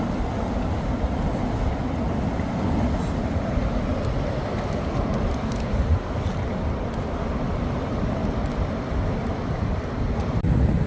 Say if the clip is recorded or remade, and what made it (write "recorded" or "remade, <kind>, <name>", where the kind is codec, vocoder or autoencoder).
recorded